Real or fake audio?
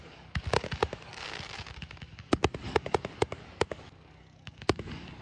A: fake